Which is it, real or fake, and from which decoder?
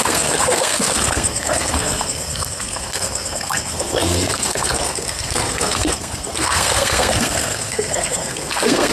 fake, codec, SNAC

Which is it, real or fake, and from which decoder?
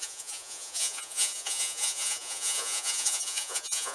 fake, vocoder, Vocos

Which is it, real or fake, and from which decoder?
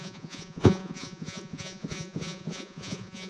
fake, vocoder, Vocos